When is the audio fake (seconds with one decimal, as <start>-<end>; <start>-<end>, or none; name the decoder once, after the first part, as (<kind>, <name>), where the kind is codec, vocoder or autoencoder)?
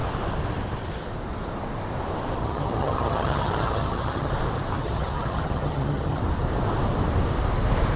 2.4-4.3 (vocoder, HiFi-GAN); 4.8-6.2